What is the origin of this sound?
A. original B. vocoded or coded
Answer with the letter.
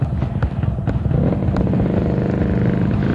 A